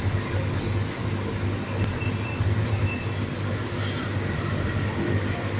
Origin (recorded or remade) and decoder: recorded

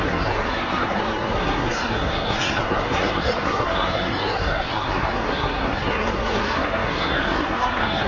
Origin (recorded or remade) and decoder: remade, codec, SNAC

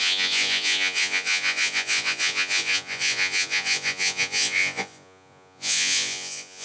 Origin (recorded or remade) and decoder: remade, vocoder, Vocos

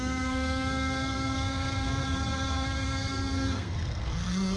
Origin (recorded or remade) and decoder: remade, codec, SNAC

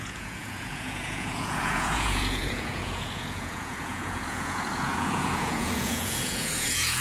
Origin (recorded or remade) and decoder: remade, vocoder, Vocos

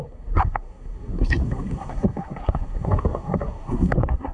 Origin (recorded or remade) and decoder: remade, codec, SNAC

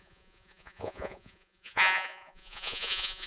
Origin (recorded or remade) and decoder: remade, vocoder, Vocos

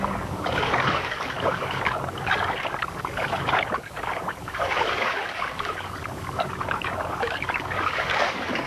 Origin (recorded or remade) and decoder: remade, codec, DAC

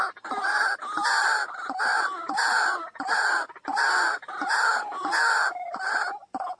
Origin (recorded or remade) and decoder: recorded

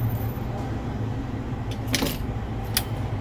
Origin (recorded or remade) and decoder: recorded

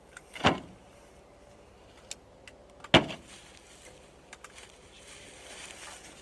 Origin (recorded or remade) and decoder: recorded